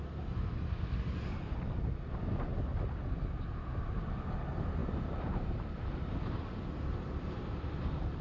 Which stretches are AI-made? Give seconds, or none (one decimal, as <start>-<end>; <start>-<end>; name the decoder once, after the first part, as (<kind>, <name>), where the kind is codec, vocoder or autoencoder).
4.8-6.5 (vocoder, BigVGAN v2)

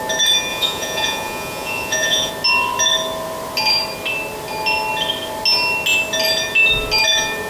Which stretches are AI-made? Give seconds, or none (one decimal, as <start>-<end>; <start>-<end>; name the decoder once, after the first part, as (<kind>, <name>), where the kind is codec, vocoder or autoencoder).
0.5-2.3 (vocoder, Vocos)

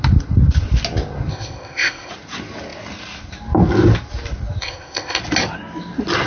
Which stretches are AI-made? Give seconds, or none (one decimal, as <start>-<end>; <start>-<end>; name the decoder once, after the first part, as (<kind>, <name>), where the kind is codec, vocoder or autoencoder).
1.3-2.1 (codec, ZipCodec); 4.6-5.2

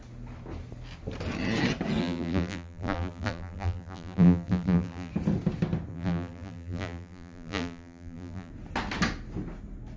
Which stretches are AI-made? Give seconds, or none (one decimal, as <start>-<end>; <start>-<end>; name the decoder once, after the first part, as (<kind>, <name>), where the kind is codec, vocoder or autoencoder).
2.0-5.1 (vocoder, BigVGAN v2); 5.9-8.5